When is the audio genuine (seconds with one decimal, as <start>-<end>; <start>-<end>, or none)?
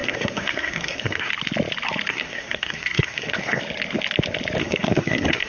1.3-2.1; 3.6-4.6